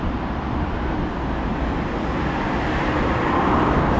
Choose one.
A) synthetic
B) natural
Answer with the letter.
B